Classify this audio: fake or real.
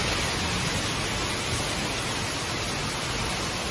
real